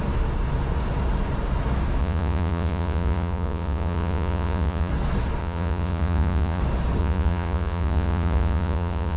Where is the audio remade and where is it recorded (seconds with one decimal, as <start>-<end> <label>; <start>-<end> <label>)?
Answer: 0.0-2.0 recorded; 2.0-4.9 remade; 4.9-5.4 recorded; 5.4-6.6 remade; 6.6-7.0 recorded; 7.0-9.2 remade